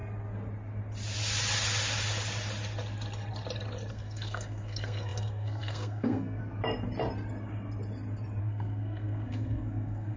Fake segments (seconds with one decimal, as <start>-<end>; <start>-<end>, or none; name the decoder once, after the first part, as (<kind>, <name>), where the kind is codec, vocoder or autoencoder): 3.9-6.4 (codec, SNAC); 8.4-10.2